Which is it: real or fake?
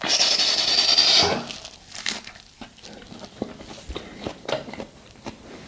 real